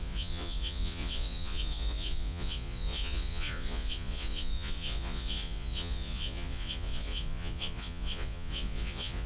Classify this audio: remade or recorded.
remade